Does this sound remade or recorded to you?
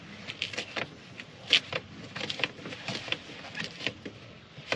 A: remade